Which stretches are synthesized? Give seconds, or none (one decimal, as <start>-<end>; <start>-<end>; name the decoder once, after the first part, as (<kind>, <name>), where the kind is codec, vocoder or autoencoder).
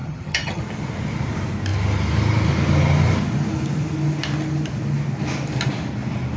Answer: 0.0-0.6 (vocoder, HiFi-GAN)